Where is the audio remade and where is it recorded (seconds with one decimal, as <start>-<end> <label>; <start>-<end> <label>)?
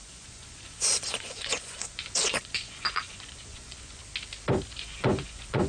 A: 0.0-4.0 remade; 4.0-4.7 recorded; 4.7-5.7 remade